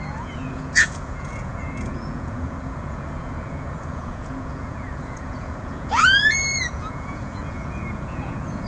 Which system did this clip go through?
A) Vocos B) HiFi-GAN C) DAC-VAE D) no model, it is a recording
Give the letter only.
A